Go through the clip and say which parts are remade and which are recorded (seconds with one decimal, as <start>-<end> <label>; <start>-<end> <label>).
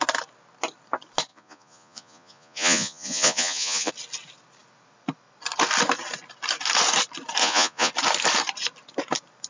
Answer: 0.0-1.3 recorded; 1.3-3.9 remade; 3.9-7.4 recorded; 7.4-7.9 remade; 7.9-9.5 recorded